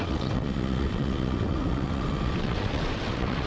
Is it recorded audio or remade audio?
remade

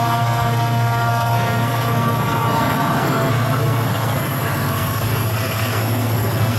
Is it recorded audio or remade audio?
remade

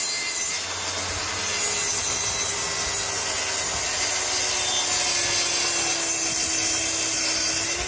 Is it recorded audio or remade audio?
recorded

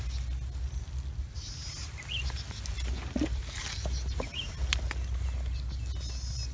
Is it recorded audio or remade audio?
recorded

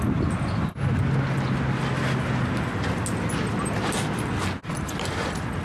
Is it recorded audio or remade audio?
recorded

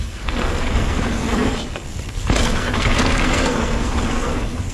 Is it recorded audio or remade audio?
remade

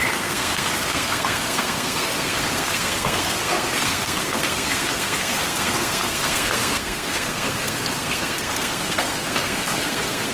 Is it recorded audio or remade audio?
remade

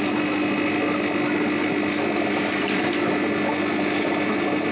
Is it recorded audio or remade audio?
recorded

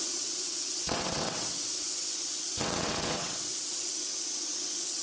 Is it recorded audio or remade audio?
remade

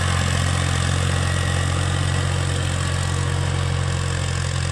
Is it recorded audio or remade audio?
recorded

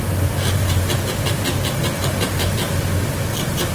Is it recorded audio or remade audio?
recorded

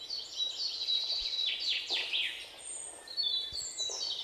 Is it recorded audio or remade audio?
recorded